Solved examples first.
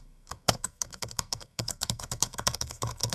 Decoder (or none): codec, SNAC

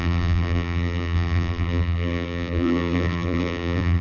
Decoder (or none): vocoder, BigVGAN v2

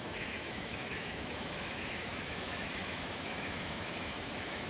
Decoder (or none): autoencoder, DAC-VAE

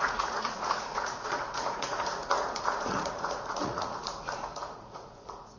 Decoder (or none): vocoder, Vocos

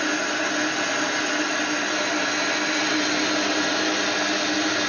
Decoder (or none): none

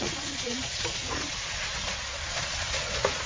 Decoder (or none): vocoder, Vocos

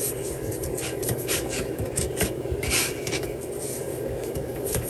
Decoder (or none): codec, DAC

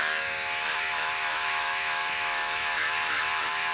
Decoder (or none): autoencoder, DAC-VAE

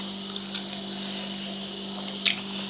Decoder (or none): none